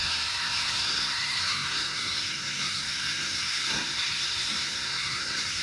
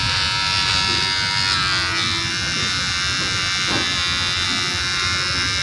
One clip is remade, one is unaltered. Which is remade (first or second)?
first